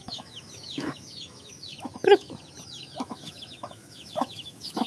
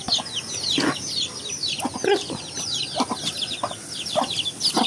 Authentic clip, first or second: second